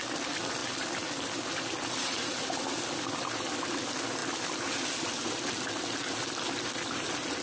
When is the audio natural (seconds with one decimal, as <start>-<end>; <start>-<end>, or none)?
0.0-7.4